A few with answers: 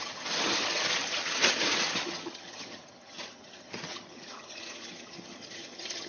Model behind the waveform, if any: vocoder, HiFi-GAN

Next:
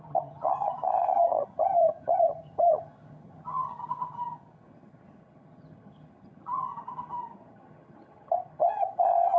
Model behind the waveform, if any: vocoder, HiFi-GAN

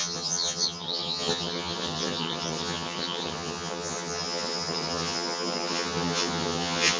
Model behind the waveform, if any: vocoder, HiFi-GAN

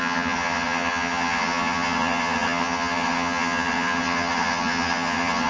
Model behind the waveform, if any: vocoder, HiFi-GAN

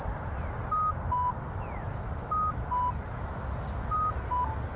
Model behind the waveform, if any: none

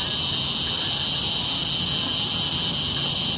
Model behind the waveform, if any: none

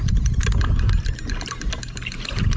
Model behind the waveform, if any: none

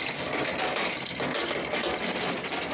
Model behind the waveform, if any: none